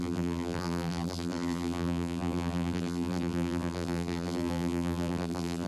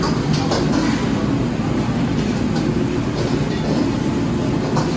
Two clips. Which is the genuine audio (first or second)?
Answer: second